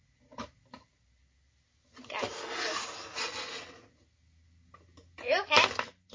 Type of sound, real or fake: real